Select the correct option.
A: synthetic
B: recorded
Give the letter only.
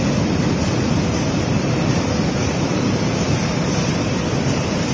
A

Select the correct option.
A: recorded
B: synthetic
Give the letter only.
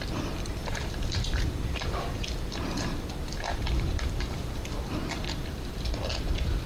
B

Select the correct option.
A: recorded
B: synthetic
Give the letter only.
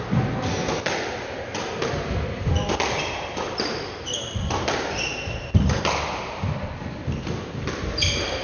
A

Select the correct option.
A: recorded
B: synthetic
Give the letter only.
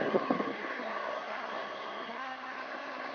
B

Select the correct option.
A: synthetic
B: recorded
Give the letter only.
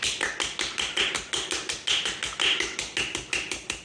B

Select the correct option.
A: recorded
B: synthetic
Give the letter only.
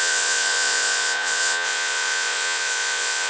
B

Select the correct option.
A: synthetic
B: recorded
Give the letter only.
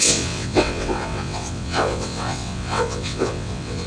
A